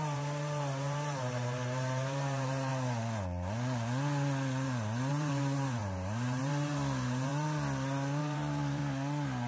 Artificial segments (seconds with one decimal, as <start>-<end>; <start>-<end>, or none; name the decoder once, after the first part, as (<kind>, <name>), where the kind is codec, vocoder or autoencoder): 0.0-2.7 (vocoder, BigVGAN v2); 5.1-7.3; 8.2-8.8